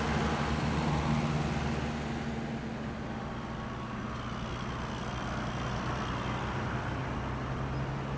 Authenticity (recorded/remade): recorded